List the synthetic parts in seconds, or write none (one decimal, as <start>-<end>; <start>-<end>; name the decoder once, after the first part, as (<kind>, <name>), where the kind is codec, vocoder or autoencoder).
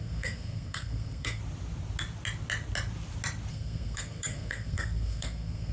0.0-1.4 (codec, SNAC); 3.5-5.7